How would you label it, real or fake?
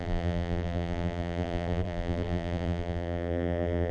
fake